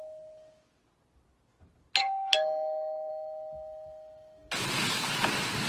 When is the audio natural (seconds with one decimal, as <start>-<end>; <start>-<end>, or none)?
0.0-2.0; 3.1-5.7